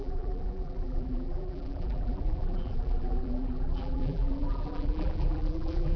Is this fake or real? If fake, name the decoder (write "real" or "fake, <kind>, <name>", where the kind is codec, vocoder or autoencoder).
fake, vocoder, BigVGAN v2